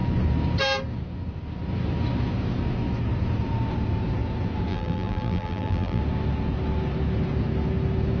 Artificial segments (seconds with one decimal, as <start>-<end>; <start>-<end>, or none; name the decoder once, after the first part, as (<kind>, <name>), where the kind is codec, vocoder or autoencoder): 4.7-6.0 (vocoder, BigVGAN v2)